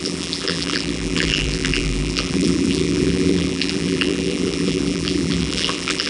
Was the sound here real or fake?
fake